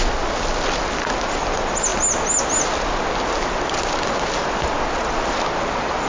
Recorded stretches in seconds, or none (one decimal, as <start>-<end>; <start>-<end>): 0.0-6.1

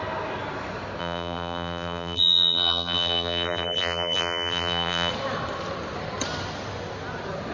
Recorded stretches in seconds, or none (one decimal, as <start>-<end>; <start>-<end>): 0.0-1.0; 5.1-7.5

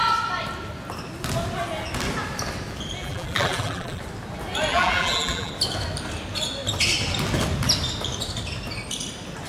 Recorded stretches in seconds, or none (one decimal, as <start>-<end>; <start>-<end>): 0.0-3.0; 4.0-4.7; 5.5-9.5